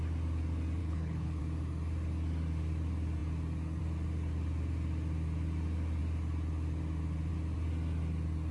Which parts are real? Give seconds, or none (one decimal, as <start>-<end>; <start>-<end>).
0.0-0.8; 1.4-8.5